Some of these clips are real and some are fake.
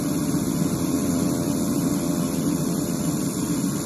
real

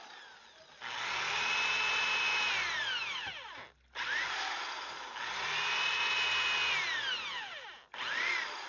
real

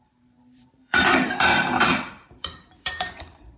fake